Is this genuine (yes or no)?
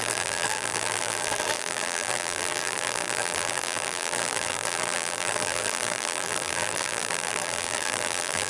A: no